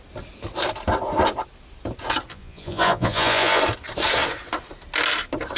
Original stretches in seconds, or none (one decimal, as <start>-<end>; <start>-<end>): 0.0-2.3; 3.6-5.6